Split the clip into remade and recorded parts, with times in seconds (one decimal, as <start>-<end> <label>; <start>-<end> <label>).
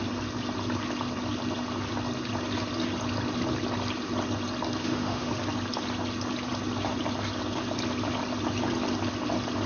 0.0-4.8 recorded; 4.8-5.3 remade; 5.3-9.7 recorded